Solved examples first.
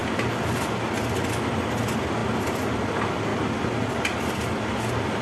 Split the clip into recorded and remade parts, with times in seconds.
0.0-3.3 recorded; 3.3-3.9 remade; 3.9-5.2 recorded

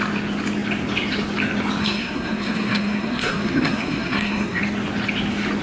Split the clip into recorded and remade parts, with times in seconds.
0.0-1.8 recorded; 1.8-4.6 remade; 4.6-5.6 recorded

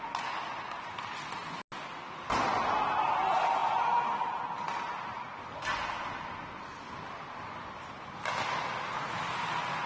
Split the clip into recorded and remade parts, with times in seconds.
0.0-9.9 recorded

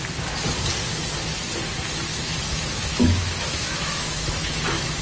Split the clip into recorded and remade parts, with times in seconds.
0.0-2.1 recorded; 2.1-5.0 remade

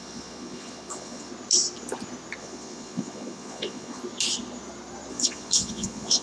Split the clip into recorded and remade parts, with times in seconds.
0.0-1.3 remade; 1.3-2.4 recorded; 2.4-4.0 remade; 4.0-5.1 recorded; 5.1-6.2 remade

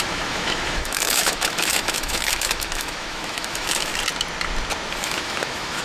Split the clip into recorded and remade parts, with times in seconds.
0.0-3.9 remade; 3.9-5.0 recorded; 5.0-5.8 remade

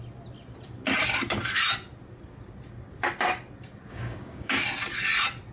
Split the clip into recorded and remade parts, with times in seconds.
0.0-3.9 recorded; 3.9-4.5 remade; 4.5-5.5 recorded

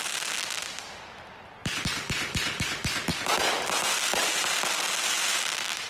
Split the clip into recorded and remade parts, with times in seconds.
0.0-1.6 recorded; 1.6-2.6 remade; 2.6-5.9 recorded